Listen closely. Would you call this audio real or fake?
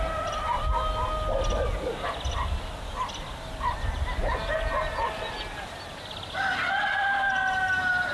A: real